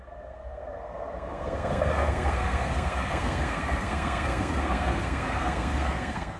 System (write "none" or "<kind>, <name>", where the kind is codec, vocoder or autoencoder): codec, SNAC